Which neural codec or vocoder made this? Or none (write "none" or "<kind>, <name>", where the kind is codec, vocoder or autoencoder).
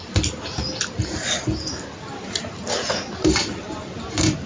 none